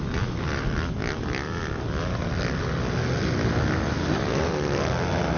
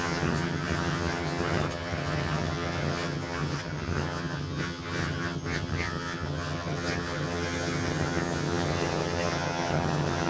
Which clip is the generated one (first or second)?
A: second